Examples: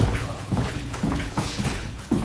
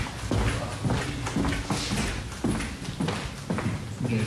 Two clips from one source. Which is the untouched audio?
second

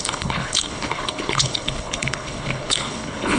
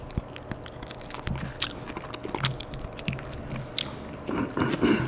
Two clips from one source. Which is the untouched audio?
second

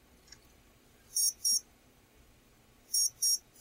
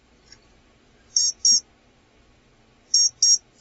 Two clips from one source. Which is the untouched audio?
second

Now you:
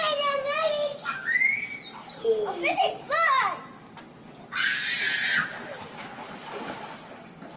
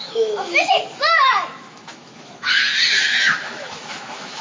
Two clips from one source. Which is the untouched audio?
first